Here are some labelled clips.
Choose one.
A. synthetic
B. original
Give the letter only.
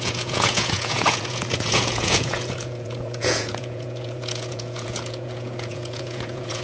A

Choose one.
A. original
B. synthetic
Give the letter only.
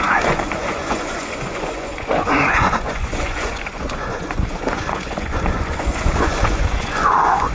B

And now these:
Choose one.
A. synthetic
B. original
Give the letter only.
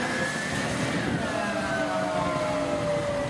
B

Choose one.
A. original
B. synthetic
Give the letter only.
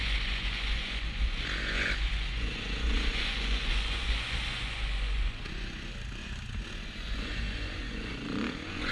B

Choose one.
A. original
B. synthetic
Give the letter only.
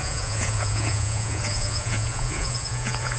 B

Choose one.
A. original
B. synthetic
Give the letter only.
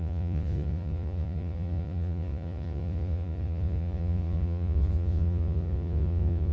B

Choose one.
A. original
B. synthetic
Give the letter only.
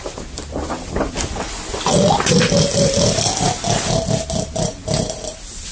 A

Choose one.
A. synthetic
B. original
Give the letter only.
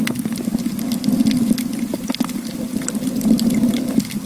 B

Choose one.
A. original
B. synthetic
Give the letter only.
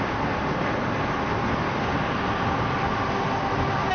A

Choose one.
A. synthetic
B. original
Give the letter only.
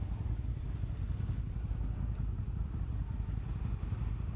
B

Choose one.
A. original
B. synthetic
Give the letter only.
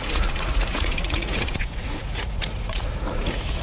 B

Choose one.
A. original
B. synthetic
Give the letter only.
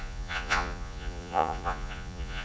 B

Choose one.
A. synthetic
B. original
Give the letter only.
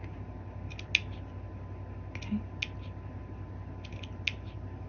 B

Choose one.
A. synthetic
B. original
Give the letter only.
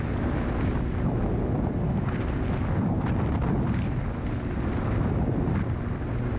B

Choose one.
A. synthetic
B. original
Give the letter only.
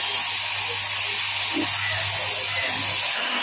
B